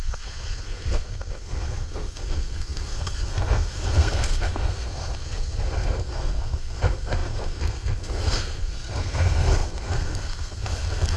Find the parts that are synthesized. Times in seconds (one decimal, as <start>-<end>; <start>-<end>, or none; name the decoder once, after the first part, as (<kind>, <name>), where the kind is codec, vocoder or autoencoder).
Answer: 0.0-11.2 (codec, SNAC)